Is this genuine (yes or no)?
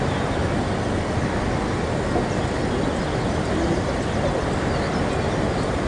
yes